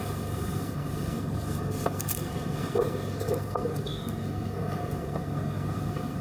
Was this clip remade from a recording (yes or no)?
yes